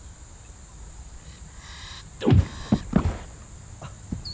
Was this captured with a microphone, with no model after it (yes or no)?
yes